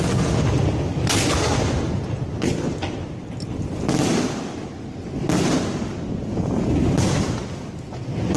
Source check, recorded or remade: recorded